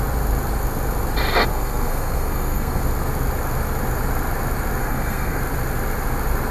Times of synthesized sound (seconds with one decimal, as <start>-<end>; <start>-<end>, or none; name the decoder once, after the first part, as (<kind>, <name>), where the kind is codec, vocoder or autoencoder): 1.5-2.8 (codec, SNAC); 4.8-5.4